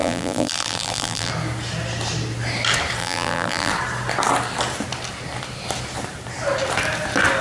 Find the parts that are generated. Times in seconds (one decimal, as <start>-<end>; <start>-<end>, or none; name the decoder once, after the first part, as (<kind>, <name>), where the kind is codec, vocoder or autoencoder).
0.0-1.3 (vocoder, BigVGAN v2); 3.0-3.7

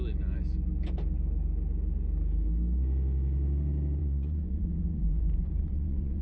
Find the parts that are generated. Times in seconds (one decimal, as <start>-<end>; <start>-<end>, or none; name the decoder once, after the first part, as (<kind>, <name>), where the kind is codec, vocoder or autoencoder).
4.0-6.2 (vocoder, Vocos)

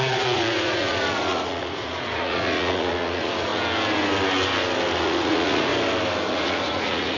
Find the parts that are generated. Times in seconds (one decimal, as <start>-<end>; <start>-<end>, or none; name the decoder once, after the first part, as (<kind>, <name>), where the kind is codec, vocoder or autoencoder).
0.0-3.5 (vocoder, Vocos); 5.0-5.7; 6.3-7.2

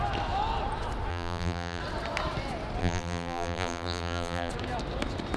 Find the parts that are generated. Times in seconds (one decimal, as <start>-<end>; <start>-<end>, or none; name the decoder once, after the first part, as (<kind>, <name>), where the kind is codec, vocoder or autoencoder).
1.1-1.8 (vocoder, BigVGAN v2); 2.8-4.5

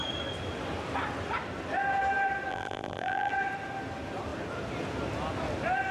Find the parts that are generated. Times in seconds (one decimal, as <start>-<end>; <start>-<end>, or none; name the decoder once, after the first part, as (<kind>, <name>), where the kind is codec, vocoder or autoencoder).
2.5-3.3 (vocoder, BigVGAN v2)